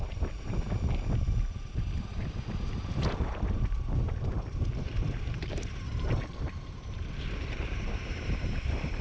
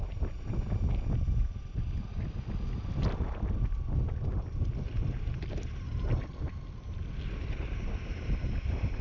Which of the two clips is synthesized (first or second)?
first